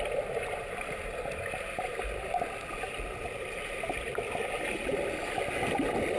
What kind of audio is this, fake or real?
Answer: real